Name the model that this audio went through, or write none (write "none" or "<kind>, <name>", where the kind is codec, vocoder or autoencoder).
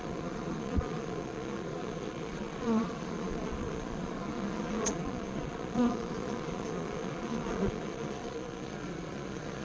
vocoder, Vocos